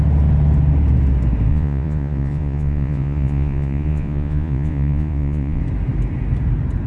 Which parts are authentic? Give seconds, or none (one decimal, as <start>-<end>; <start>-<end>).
0.0-1.5; 5.6-6.9